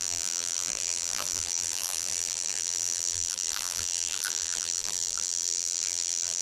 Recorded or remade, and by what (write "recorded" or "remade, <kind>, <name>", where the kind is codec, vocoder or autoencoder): remade, vocoder, BigVGAN v2